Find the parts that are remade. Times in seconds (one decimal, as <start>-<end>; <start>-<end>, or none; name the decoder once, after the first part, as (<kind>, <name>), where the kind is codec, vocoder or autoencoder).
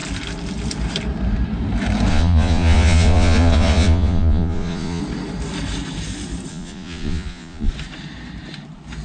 2.1-5.0 (vocoder, Vocos); 6.5-7.7